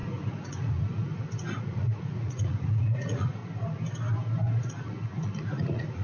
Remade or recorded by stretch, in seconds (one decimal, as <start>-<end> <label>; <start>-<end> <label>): 0.0-1.1 remade; 1.1-1.6 recorded; 1.6-3.4 remade; 3.4-4.8 recorded; 4.8-6.0 remade